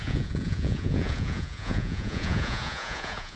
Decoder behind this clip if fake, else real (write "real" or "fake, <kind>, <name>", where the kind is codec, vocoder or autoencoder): fake, vocoder, Vocos